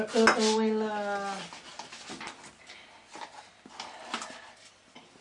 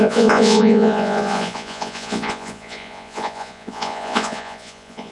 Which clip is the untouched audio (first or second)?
first